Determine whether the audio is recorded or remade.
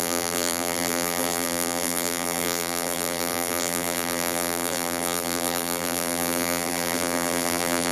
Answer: remade